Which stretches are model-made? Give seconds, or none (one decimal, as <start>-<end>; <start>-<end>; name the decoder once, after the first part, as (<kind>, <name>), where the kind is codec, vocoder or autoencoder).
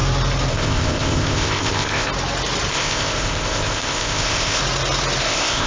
0.5-2.1 (codec, ZipCodec); 2.7-4.6; 5.2-5.7